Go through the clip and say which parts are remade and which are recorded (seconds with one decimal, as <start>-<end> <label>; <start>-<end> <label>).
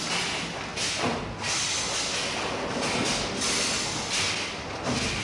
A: 0.0-5.2 recorded